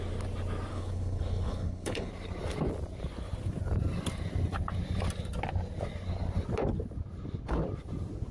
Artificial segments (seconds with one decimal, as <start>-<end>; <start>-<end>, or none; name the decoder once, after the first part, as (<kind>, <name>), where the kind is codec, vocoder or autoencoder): 0.7-2.1 (codec, HILCodec)